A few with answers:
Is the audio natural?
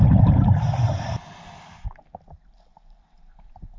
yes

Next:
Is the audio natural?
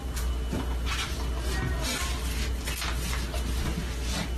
yes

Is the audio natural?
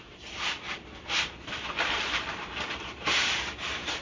no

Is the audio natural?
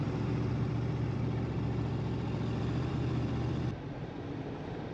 no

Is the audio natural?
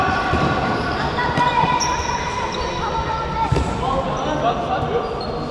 yes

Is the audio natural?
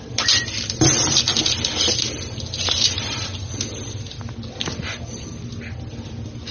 yes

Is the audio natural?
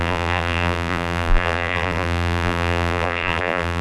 no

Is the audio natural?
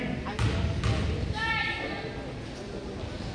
yes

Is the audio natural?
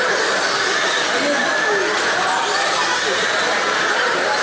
yes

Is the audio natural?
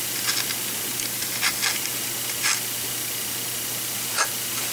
yes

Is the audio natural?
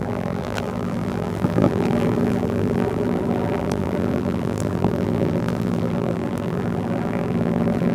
no